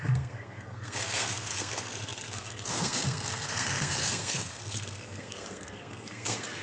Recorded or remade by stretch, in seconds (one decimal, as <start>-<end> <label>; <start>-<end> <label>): 0.0-6.6 remade